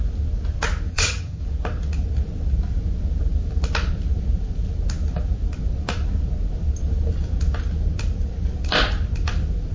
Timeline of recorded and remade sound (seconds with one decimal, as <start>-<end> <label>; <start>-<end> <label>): 0.0-0.9 recorded; 0.9-1.4 remade; 1.4-9.7 recorded